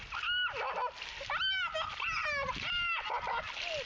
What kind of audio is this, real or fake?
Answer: real